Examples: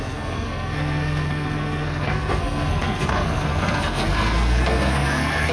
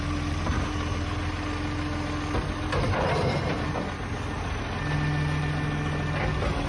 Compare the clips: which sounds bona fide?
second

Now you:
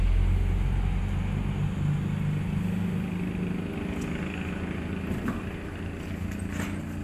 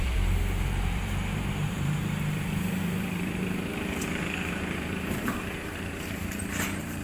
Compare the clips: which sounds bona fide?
first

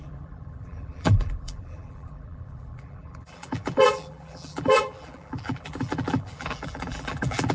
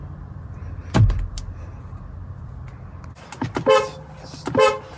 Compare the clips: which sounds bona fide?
second